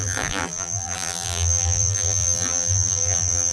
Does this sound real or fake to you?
fake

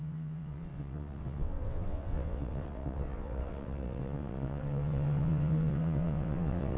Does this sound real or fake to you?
fake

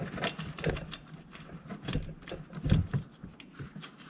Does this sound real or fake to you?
real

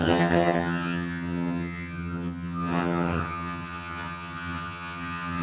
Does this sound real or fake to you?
fake